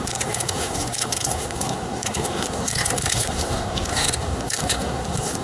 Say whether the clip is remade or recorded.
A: remade